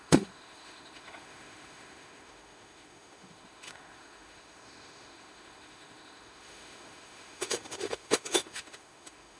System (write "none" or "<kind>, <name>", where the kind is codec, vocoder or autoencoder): autoencoder, DAC-VAE